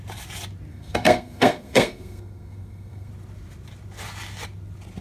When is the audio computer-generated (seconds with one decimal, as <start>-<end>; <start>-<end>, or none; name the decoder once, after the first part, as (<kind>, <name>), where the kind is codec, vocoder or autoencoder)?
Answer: 0.7-3.1 (codec, SNAC)